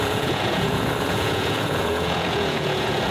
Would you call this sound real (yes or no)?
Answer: no